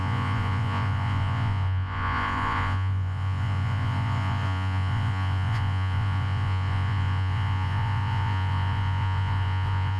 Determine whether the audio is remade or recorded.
remade